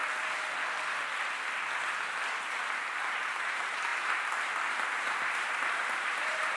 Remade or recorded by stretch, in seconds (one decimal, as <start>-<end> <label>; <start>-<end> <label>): 0.0-2.5 recorded; 2.5-3.9 remade; 3.9-4.7 recorded; 4.7-6.6 remade